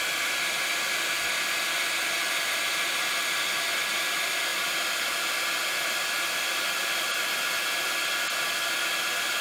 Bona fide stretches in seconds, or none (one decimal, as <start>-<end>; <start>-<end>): 0.0-9.4